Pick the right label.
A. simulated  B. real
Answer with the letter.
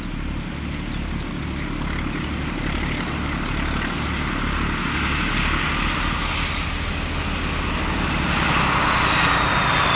B